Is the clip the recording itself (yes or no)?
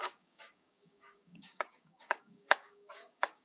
no